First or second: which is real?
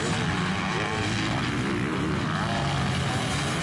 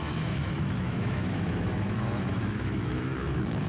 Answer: first